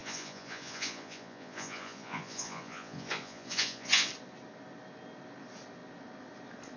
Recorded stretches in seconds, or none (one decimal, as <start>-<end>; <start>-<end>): 4.1-6.8